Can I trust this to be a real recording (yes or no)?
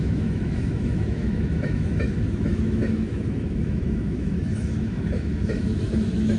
no